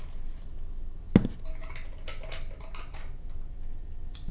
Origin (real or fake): real